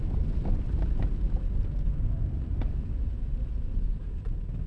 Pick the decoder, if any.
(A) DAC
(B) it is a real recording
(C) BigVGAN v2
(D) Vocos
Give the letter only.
B